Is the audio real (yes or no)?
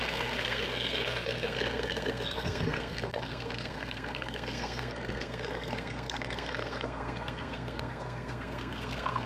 no